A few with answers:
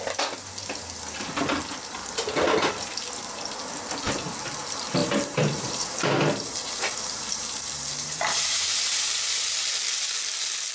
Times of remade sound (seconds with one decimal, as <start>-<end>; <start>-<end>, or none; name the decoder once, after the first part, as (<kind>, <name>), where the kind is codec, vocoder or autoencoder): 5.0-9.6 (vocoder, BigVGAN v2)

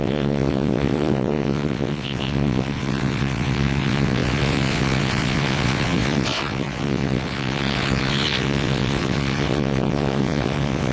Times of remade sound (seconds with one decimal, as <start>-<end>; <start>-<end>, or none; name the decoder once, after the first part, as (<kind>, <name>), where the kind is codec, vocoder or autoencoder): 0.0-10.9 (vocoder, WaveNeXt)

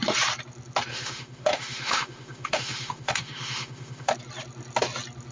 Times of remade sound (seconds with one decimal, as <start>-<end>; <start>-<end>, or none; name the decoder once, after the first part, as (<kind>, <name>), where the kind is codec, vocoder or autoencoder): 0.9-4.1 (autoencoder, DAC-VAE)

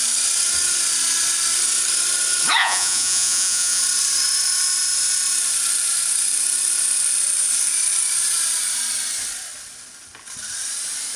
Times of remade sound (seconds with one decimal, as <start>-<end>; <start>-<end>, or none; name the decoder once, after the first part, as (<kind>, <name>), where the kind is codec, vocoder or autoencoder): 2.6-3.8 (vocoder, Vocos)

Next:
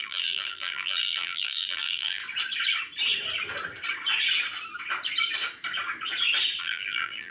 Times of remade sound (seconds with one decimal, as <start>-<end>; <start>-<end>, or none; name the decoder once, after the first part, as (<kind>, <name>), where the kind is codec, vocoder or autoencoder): 0.0-2.2 (vocoder, BigVGAN v2); 6.6-7.3

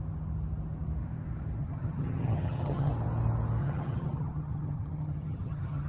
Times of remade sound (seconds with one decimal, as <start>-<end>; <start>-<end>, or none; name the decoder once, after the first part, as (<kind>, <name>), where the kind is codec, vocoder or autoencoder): 1.6-2.9 (vocoder, HiFi-GAN); 3.6-5.9

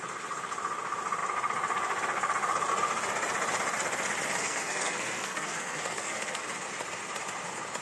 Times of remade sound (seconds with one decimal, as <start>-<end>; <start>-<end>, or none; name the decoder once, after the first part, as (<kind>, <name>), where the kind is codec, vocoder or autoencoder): 4.4-6.4 (codec, SNAC)

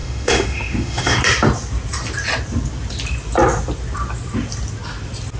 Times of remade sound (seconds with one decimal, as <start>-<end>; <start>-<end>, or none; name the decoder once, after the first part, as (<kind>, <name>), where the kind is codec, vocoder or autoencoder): 0.0-1.2 (autoencoder, DAC-VAE)